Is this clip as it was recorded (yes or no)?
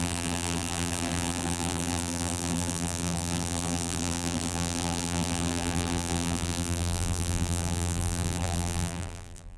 no